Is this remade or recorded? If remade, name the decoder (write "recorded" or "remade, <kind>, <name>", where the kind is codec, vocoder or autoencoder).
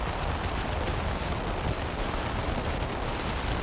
recorded